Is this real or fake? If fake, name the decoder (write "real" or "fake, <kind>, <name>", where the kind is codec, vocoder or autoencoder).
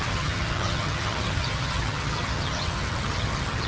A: fake, vocoder, HiFi-GAN